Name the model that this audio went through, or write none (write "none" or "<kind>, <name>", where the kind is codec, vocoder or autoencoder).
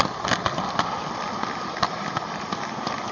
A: none